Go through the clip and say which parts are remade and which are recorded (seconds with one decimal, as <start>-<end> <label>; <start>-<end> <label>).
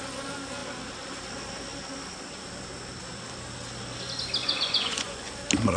0.0-4.4 recorded; 4.4-5.3 remade; 5.3-5.8 recorded